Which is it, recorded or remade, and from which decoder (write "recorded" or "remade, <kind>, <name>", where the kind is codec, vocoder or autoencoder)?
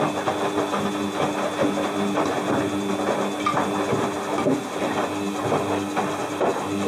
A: recorded